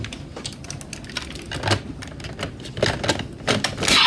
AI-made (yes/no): no